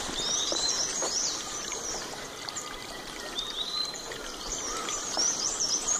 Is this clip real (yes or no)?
no